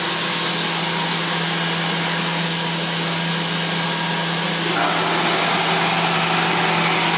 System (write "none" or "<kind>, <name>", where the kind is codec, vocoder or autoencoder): none